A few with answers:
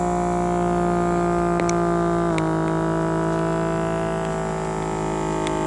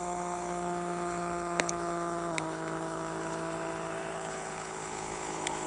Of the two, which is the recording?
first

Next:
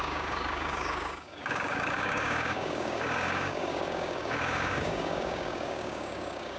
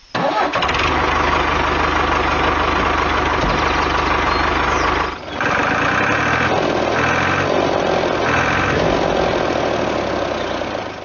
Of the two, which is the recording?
second